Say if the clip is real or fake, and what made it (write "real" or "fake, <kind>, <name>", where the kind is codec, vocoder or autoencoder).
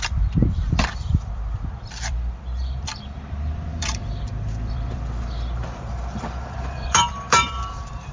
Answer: fake, vocoder, BigVGAN v2